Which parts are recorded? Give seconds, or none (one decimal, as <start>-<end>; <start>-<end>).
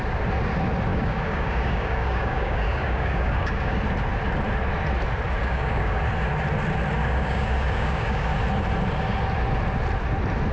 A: 0.0-0.9; 3.7-5.4; 6.0-7.0; 8.3-10.5